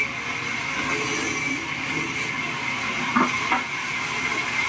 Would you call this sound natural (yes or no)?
yes